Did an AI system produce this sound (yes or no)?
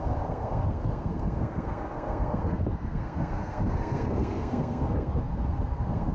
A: yes